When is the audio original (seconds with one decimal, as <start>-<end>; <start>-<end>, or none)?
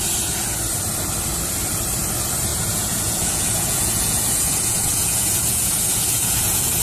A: 0.0-2.5